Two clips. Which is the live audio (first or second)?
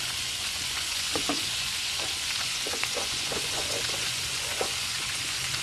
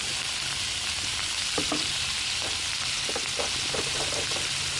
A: second